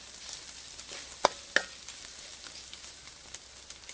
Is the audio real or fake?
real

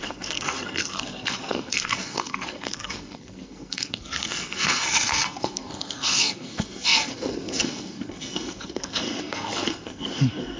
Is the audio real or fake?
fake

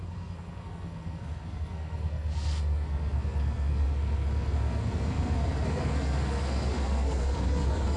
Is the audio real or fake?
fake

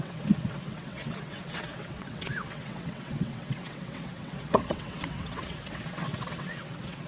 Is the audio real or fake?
fake